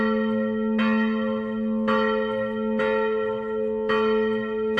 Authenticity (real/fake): real